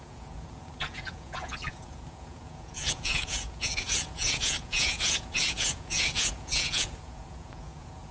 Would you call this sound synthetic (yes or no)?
yes